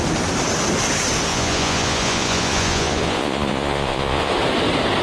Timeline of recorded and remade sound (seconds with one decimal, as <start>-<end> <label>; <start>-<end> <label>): 0.0-1.3 recorded; 1.3-4.3 remade; 4.3-5.0 recorded